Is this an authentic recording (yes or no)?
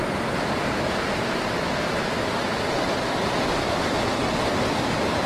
yes